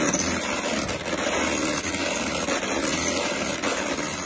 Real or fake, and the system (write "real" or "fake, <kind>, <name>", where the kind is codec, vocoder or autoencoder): real